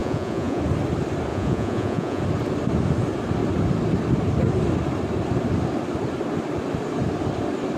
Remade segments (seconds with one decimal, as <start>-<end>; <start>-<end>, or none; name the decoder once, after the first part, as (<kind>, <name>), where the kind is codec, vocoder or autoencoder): 0.0-0.6 (vocoder, Vocos); 1.3-2.2